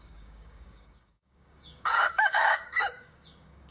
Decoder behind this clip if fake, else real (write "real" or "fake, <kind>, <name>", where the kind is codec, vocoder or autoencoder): fake, codec, DAC